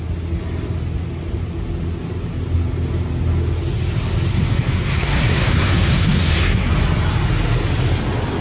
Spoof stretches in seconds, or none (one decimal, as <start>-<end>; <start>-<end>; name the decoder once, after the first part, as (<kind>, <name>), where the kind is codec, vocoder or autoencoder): 4.3-6.7 (codec, SNAC)